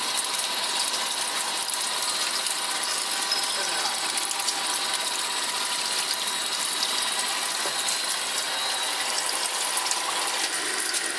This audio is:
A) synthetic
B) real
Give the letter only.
B